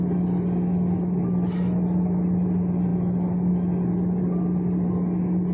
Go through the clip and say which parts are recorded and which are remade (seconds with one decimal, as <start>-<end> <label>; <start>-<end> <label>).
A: 0.0-5.5 recorded